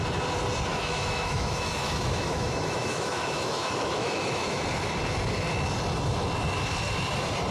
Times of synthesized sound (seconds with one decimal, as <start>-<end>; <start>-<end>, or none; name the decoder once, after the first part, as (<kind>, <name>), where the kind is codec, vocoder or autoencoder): 0.7-4.6 (autoencoder, DAC-VAE)